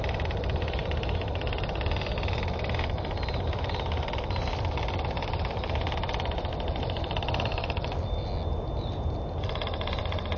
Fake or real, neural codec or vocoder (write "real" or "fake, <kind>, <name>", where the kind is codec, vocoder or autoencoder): real